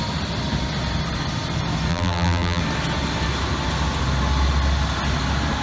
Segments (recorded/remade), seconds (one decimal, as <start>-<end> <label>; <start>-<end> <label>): 0.0-1.9 recorded; 1.9-2.6 remade; 2.6-5.6 recorded